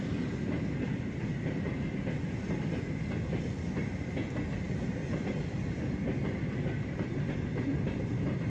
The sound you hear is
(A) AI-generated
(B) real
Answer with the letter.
B